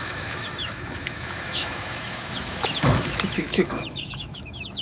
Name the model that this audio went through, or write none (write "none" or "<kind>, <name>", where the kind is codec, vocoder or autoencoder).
autoencoder, DAC-VAE